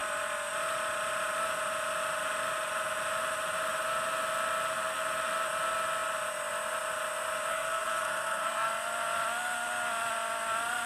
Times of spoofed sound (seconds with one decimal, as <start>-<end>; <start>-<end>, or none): 7.5-8.7